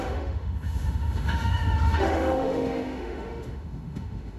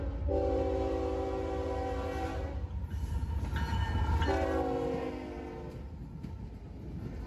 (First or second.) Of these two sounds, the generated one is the first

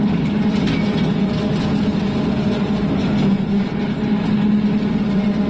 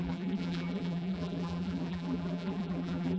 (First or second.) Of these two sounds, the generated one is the second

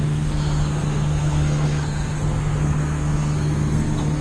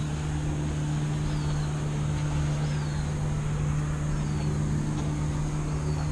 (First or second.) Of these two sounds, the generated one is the first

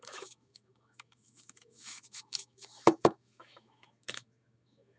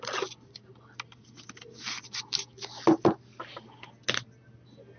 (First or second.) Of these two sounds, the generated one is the first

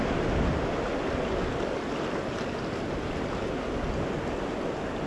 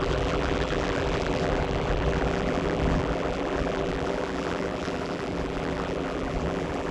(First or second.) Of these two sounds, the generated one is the second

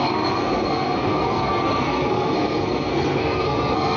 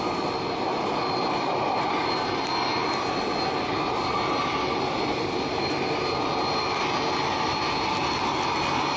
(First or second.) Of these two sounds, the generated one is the first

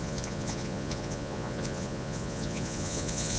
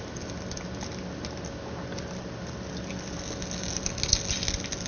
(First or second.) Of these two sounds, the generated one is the first